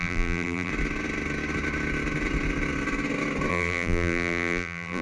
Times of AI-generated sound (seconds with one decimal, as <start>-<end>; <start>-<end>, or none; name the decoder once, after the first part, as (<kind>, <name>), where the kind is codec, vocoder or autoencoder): 0.0-0.7 (vocoder, BigVGAN v2); 3.5-5.0